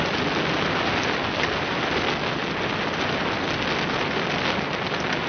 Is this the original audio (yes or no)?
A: yes